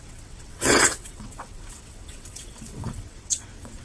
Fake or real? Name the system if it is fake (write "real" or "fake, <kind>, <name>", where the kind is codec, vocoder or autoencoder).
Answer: fake, vocoder, WaveNeXt